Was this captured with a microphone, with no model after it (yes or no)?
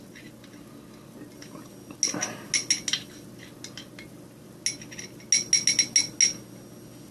yes